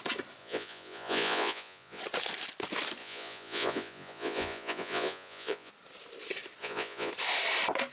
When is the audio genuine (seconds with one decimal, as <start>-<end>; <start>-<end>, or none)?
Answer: 0.0-0.4; 2.0-3.0; 5.7-6.6; 7.1-7.9